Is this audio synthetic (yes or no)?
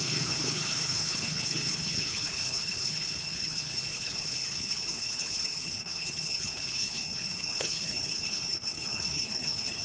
yes